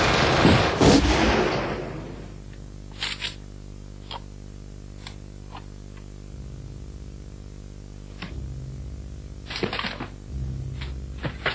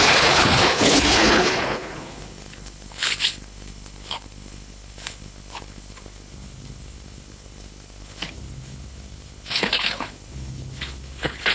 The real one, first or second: first